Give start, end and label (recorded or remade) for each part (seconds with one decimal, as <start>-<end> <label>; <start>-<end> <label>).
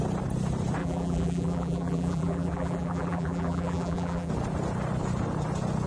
0.0-0.8 recorded; 0.8-4.3 remade; 4.3-5.9 recorded